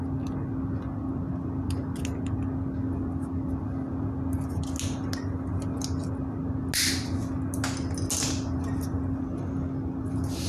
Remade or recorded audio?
recorded